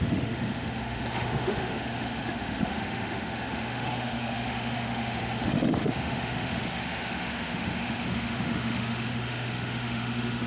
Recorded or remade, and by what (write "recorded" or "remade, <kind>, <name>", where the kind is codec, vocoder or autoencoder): remade, autoencoder, DAC-VAE